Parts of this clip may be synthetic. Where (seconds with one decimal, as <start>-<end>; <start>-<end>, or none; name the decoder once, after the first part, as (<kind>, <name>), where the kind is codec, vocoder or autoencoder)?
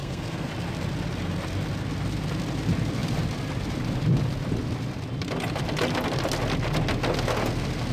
0.0-0.5 (codec, SNAC)